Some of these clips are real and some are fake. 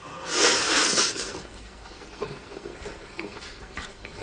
fake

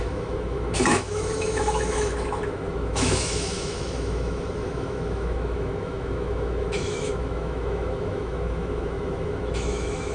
fake